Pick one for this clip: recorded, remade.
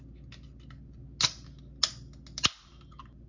recorded